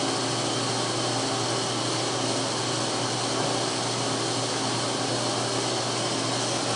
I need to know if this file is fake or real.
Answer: real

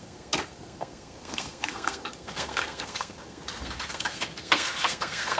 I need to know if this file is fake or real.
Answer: fake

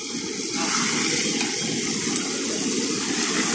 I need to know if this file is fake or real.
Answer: real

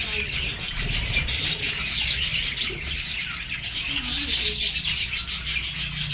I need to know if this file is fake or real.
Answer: real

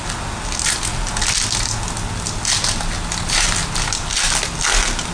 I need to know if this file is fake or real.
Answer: real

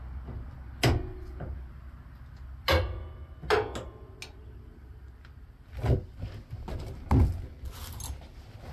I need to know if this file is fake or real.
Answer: real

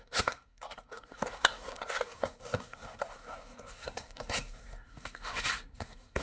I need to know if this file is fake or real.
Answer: fake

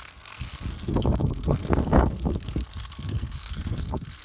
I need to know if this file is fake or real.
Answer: fake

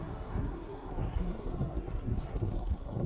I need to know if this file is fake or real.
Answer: fake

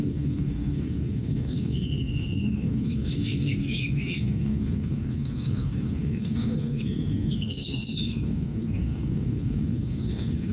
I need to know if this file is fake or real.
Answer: fake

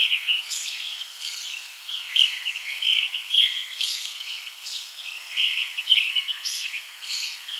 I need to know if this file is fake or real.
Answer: fake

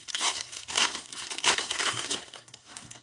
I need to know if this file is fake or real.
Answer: fake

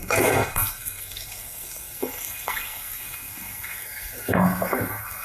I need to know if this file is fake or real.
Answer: fake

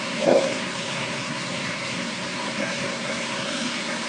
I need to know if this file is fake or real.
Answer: fake